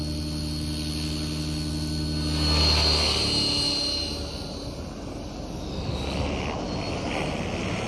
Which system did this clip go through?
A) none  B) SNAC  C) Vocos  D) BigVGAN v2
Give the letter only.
A